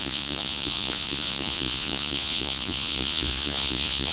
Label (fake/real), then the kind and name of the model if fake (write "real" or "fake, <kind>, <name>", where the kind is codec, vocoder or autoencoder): fake, vocoder, Vocos